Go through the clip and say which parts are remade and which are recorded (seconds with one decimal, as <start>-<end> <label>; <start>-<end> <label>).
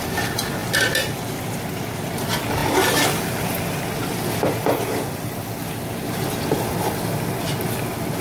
0.0-8.2 recorded